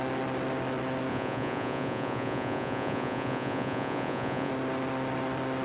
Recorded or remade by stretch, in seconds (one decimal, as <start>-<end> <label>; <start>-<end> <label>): 0.0-1.1 recorded; 1.1-4.5 remade; 4.5-5.6 recorded